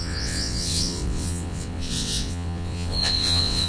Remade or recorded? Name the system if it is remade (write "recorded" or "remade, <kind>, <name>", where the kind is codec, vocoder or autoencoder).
remade, vocoder, WaveNeXt